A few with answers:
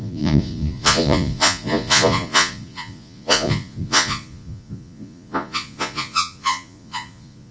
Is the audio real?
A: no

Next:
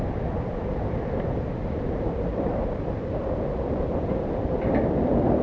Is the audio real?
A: yes